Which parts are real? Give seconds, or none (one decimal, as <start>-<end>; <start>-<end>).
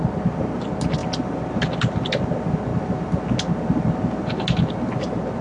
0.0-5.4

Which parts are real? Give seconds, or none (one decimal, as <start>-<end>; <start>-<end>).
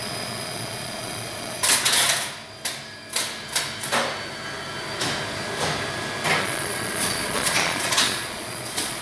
1.6-6.4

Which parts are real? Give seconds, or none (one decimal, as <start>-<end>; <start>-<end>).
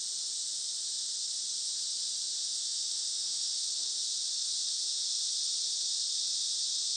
0.0-2.4; 3.6-7.0